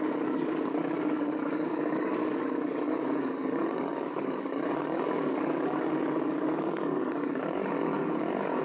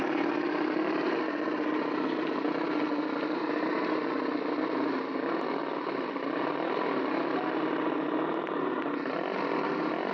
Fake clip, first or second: first